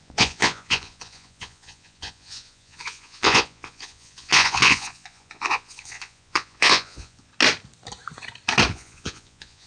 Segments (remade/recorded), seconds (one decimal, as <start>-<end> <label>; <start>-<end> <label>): 0.0-7.3 remade; 7.3-8.7 recorded; 8.7-9.7 remade